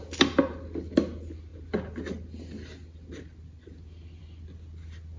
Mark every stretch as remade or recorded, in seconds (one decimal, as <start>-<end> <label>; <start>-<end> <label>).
0.0-5.2 recorded